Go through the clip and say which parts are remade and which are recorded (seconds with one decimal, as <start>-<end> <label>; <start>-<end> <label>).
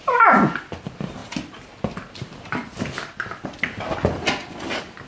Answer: 0.0-5.1 recorded